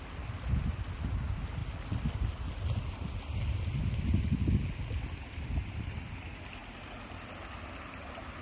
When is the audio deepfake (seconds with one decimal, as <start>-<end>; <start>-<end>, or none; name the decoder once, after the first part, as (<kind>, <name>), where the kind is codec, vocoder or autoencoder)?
none